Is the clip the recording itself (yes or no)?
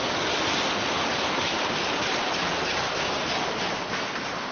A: yes